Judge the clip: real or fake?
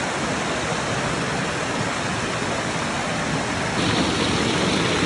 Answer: real